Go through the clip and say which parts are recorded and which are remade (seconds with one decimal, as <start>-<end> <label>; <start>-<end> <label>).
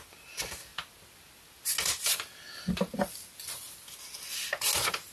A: 0.0-5.1 recorded